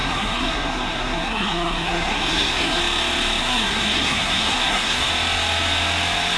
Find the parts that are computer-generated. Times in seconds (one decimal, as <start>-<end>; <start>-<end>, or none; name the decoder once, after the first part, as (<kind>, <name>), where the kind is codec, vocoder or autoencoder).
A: 0.0-2.8 (codec, SNAC); 3.4-5.1